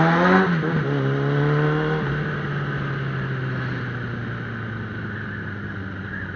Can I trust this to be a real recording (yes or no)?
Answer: yes